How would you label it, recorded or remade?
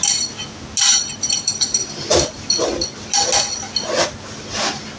recorded